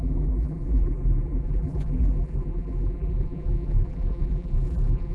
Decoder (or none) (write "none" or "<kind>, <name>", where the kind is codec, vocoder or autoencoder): vocoder, BigVGAN v2